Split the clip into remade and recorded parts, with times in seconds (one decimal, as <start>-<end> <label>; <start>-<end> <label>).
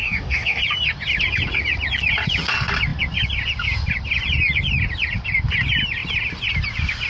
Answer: 0.0-0.6 remade; 0.6-7.1 recorded